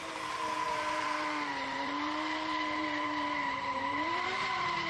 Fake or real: fake